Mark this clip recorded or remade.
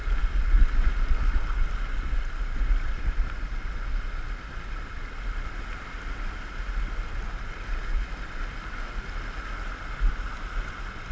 recorded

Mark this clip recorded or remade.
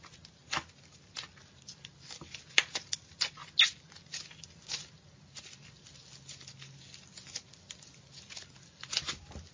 recorded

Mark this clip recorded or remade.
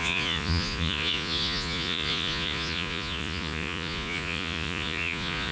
remade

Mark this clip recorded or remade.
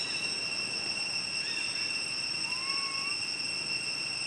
recorded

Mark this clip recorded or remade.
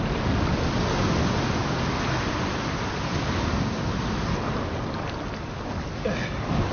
recorded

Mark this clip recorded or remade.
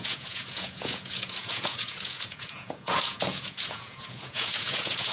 remade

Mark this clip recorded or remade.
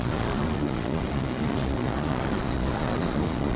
remade